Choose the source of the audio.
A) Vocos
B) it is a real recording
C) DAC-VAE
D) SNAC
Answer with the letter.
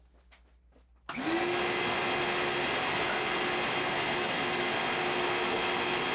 B